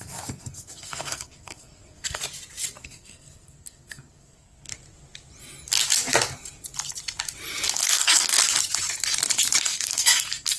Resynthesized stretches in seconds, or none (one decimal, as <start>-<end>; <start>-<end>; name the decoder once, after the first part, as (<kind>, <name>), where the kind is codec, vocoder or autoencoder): 0.0-2.2 (codec, SNAC); 2.8-4.7; 7.7-8.3; 9.6-10.6